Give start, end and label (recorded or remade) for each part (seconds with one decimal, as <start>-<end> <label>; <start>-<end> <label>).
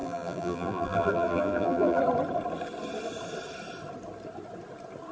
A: 0.0-2.0 remade; 2.0-5.1 recorded